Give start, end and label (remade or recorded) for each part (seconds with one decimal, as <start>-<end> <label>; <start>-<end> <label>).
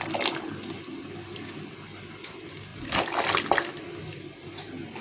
0.0-5.0 recorded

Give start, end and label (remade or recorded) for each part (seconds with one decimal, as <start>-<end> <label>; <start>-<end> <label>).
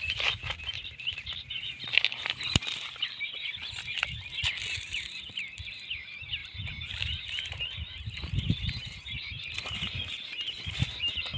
0.0-2.6 remade; 2.6-4.7 recorded; 4.7-11.4 remade